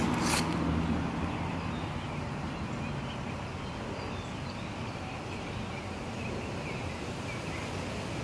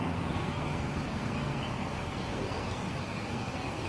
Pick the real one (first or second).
first